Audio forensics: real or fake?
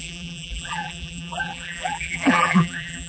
fake